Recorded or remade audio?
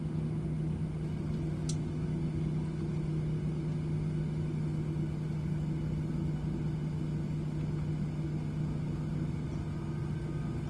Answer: recorded